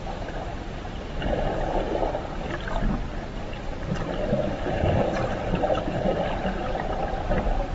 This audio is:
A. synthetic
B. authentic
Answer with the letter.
B